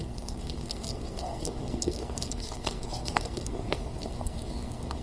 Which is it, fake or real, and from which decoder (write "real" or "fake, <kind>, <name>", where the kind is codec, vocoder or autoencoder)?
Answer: fake, codec, SNAC